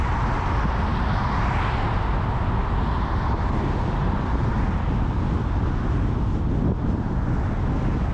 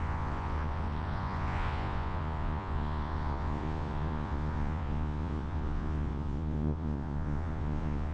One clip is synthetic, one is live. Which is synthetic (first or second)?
second